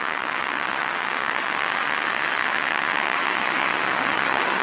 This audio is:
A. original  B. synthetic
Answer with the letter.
B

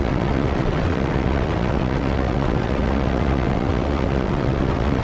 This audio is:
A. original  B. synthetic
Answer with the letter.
B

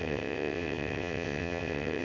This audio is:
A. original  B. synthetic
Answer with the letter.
B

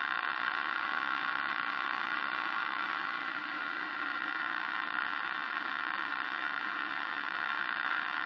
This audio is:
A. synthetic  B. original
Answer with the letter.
A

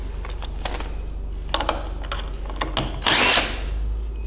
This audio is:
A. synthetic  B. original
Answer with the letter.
B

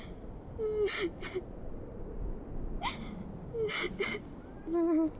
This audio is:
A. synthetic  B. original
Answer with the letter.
B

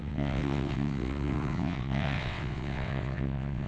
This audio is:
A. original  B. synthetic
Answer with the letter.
B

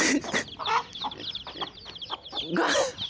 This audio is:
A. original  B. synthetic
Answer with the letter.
A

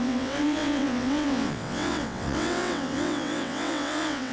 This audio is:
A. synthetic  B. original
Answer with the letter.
A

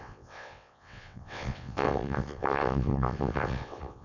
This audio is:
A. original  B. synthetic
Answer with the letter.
B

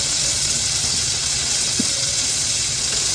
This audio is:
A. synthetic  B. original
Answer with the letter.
A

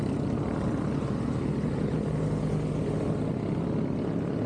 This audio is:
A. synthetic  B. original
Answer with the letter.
B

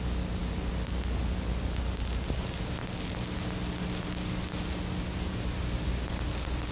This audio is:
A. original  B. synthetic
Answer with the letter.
A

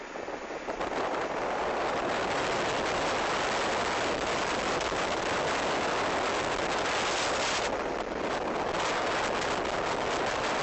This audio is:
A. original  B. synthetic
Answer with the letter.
A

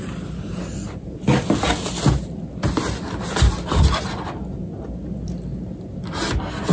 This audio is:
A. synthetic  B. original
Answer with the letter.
B